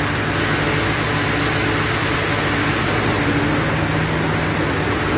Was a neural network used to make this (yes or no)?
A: no